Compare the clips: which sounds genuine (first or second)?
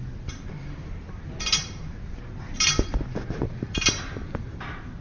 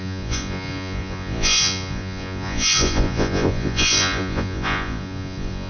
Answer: first